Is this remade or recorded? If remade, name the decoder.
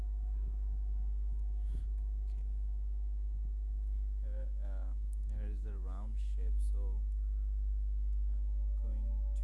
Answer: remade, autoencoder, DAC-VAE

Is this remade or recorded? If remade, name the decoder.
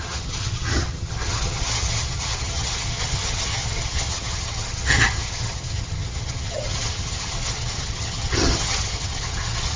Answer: remade, vocoder, HiFi-GAN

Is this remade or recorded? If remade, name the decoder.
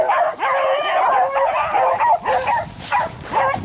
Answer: recorded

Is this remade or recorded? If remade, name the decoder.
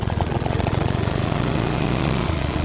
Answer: remade, vocoder, Vocos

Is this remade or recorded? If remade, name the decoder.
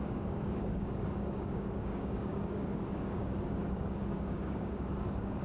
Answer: remade, codec, DAC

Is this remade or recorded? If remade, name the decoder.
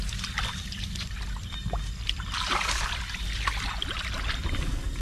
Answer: recorded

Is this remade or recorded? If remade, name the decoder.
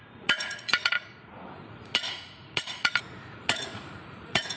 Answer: remade, vocoder, Vocos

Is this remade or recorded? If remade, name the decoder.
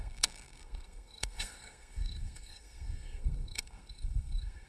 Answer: remade, codec, SNAC